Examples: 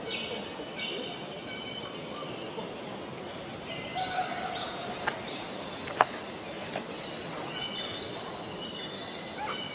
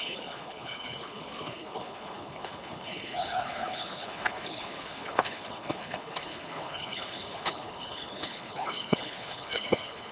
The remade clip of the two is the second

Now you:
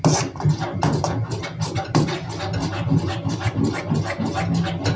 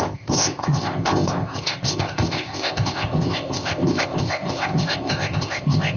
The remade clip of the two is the second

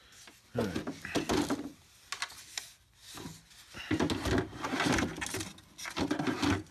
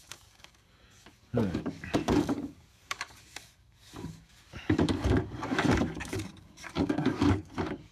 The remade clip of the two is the second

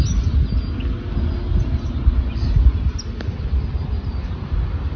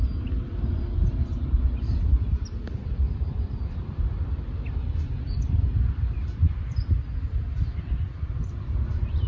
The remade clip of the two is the second